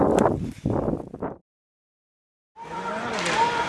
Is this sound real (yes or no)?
yes